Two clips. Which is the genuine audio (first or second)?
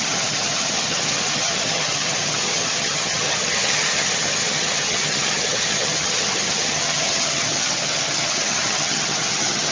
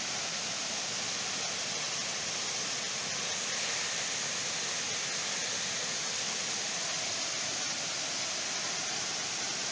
second